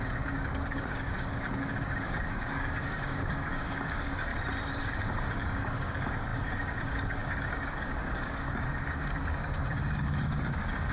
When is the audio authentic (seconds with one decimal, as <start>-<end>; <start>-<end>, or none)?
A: 4.3-4.8